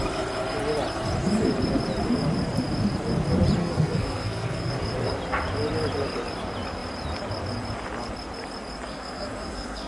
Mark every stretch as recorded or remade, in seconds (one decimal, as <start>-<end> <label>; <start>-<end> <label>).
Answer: 0.0-3.6 recorded; 3.6-4.7 remade; 4.7-8.9 recorded; 8.9-9.9 remade